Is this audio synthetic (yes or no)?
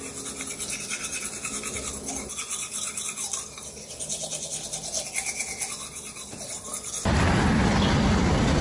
no